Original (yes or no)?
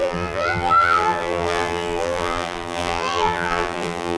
no